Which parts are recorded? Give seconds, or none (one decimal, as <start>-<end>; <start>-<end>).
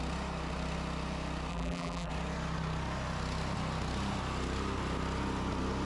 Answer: 0.0-1.5; 2.1-5.9